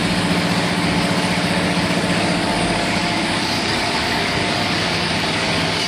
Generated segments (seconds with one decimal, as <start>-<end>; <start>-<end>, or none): 0.0-5.9